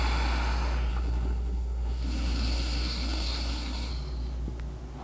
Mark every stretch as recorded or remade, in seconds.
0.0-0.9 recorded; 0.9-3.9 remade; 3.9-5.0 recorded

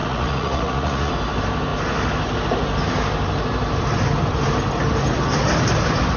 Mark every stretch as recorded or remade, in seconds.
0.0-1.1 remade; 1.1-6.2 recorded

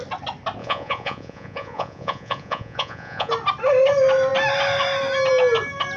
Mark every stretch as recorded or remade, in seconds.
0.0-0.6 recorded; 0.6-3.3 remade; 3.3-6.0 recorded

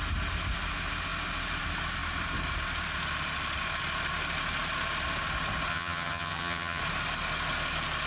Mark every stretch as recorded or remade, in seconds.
0.0-5.7 recorded; 5.7-6.8 remade; 6.8-8.1 recorded

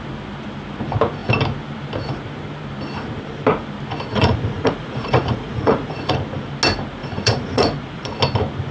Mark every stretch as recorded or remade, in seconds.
0.0-4.1 recorded; 4.1-6.1 remade; 6.1-7.0 recorded; 7.0-8.1 remade; 8.1-8.7 recorded

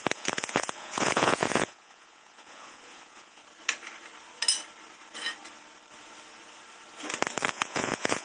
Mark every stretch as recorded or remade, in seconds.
0.0-3.4 remade; 3.4-7.5 recorded; 7.5-8.2 remade